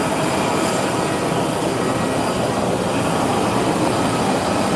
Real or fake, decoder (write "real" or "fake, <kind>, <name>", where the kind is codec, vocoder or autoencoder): real